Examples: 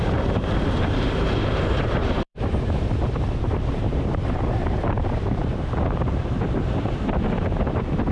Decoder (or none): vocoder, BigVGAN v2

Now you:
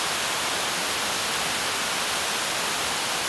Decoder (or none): none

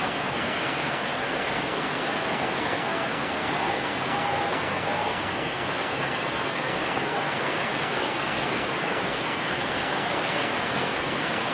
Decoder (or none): codec, SNAC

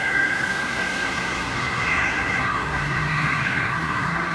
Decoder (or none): codec, SNAC